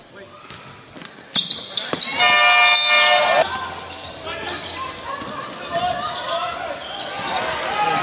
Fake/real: real